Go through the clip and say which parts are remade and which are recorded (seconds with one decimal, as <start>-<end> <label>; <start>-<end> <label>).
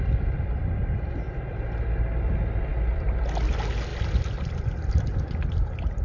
0.0-0.6 recorded; 0.6-1.6 remade; 1.6-2.7 recorded; 2.7-3.2 remade; 3.2-3.9 recorded; 3.9-5.6 remade; 5.6-6.0 recorded